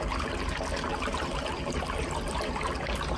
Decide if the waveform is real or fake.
real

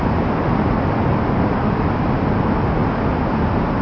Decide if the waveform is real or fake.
real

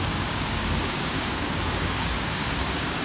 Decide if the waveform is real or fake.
fake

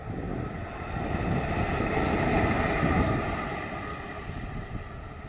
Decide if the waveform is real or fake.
real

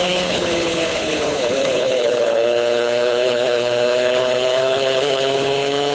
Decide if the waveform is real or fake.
fake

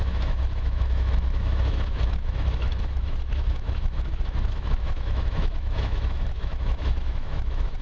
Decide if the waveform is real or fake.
fake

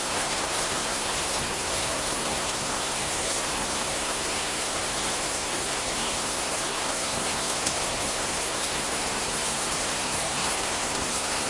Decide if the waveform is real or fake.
fake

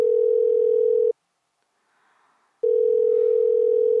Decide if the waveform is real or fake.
real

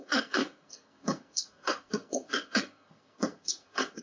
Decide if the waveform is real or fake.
fake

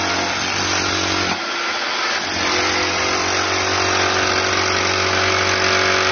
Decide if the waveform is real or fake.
real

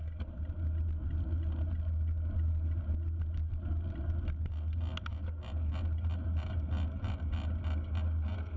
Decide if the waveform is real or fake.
real